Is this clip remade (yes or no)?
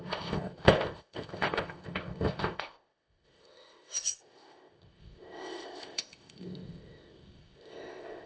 yes